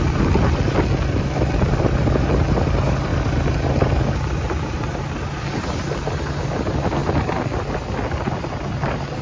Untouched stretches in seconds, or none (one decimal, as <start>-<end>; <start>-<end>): 0.0-9.2